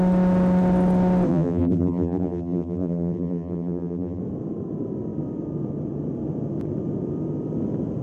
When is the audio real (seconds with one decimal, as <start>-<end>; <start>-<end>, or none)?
0.0-1.3; 4.2-8.0

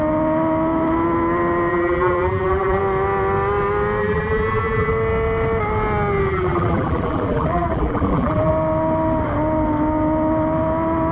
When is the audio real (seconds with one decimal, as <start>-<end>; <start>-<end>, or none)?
0.0-1.7; 2.8-4.0; 4.9-6.3; 8.5-11.1